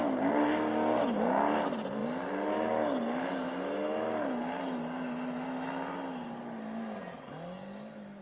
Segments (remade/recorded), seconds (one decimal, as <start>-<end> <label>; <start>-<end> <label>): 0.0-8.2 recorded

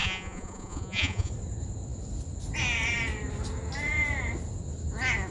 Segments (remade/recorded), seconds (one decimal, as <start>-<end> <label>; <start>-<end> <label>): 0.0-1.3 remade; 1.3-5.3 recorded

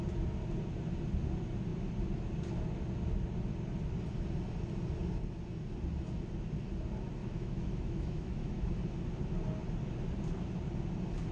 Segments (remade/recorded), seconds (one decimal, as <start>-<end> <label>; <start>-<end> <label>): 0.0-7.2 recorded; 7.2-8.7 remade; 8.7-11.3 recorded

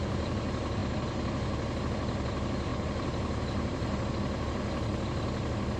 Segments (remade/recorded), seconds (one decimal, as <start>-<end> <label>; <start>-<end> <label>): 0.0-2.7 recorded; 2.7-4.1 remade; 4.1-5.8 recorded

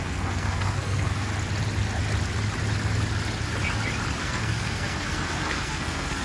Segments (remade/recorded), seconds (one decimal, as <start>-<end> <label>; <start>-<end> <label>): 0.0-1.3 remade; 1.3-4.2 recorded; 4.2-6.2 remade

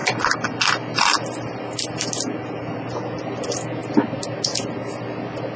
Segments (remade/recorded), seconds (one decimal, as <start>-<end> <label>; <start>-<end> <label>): 0.0-5.6 recorded

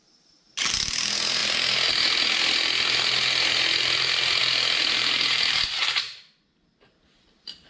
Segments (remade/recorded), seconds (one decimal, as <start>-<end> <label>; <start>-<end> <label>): 0.0-7.7 recorded

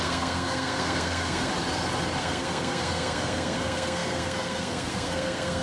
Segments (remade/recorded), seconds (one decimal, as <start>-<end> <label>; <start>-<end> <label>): 0.0-1.5 remade; 1.5-2.2 recorded; 2.2-5.6 remade